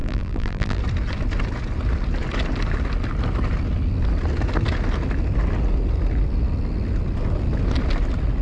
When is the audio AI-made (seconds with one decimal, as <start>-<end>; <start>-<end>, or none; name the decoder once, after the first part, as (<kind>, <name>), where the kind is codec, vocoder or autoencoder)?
0.0-0.8 (vocoder, BigVGAN v2)